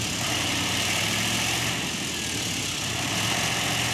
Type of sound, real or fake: fake